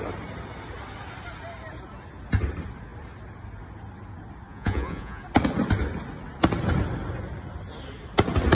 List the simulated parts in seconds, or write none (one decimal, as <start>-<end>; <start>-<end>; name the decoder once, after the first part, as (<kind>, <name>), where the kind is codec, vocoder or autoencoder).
4.5-5.2 (vocoder, Vocos)